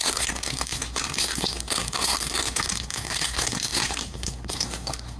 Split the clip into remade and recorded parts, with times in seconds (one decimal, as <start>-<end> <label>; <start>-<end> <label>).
0.0-5.2 remade